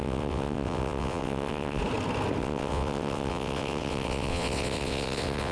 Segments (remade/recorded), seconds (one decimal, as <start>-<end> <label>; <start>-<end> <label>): 0.0-1.8 remade; 1.8-2.4 recorded; 2.4-5.5 remade